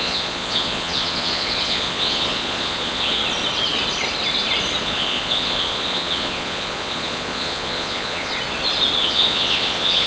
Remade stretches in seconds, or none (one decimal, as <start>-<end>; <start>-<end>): 0.0-3.2; 4.8-8.3; 9.0-10.1